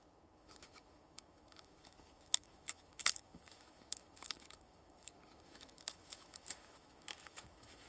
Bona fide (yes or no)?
no